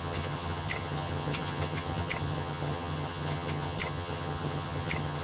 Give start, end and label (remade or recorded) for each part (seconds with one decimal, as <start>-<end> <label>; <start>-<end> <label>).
0.0-5.2 remade